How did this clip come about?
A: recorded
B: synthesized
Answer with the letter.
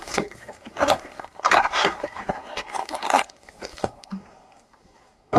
B